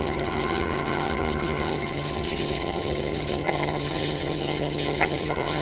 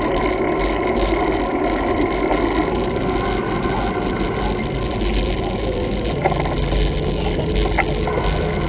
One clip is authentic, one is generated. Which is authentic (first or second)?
second